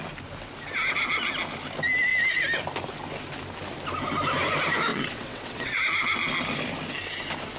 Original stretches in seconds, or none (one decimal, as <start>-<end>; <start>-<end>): 0.0-4.9; 5.8-7.6